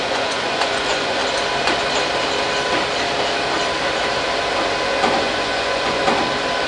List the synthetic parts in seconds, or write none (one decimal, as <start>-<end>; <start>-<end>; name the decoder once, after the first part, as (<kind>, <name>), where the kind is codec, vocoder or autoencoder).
0.0-1.2 (vocoder, Vocos); 5.2-6.0